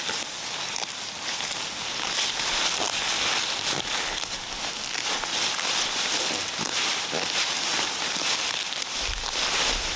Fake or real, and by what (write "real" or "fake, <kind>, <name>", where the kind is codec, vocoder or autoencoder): real